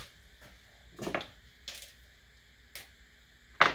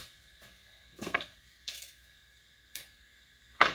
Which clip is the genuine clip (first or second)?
first